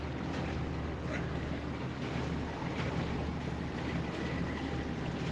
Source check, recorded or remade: recorded